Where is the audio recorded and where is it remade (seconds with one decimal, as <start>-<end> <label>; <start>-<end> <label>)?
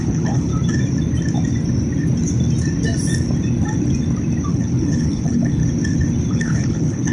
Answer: 0.0-0.5 remade; 0.5-4.5 recorded; 4.5-5.6 remade; 5.6-6.3 recorded; 6.3-7.1 remade